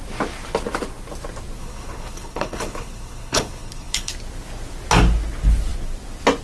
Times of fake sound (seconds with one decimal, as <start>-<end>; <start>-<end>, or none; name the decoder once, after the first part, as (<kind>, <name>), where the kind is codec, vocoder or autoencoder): 1.6-4.1 (codec, HILCodec)